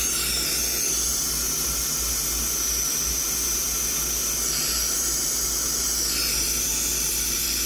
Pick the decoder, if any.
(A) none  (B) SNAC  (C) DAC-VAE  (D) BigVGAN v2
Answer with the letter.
A